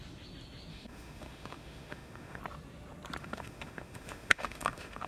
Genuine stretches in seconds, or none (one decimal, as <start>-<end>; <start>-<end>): 0.0-0.7; 2.4-3.2